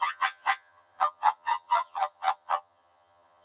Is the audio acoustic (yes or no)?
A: no